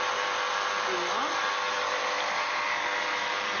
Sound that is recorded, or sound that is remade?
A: recorded